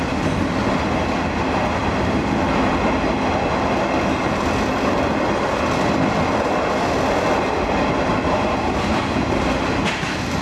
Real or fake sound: real